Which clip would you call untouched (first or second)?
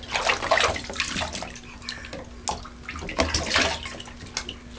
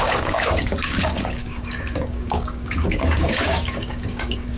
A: first